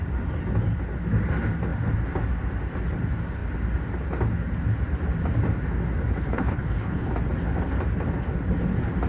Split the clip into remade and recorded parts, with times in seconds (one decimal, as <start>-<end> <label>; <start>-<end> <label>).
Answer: 0.0-6.1 recorded; 6.1-7.1 remade; 7.1-9.1 recorded